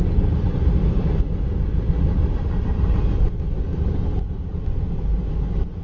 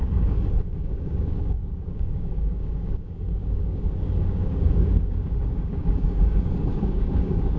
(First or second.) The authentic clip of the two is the first